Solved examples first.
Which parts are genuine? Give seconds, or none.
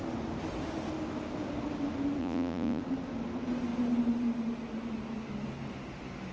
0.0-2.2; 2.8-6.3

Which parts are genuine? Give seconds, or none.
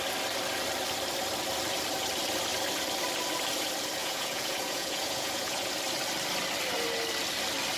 0.0-4.0; 5.7-7.8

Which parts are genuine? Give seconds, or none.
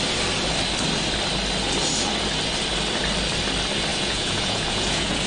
0.0-3.9